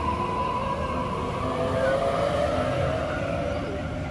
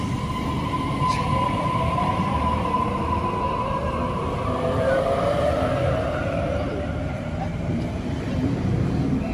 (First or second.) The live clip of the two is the first